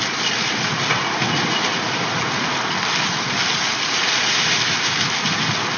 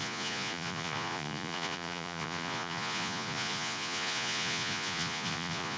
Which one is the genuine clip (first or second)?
first